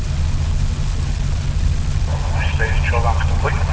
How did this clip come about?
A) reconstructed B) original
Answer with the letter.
B